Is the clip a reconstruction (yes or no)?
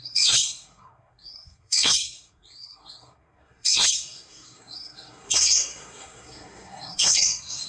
yes